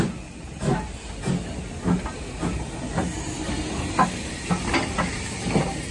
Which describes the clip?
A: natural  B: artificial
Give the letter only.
A